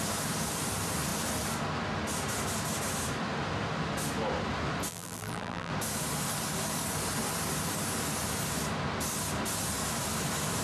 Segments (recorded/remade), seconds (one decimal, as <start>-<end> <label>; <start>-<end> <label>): 0.0-4.9 recorded; 4.9-5.7 remade; 5.7-10.6 recorded